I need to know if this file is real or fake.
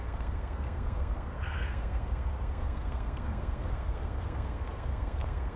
fake